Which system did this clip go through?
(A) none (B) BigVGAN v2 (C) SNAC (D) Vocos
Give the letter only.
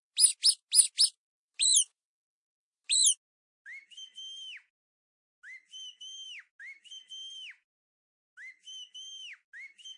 A